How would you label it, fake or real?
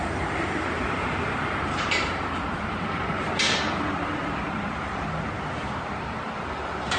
fake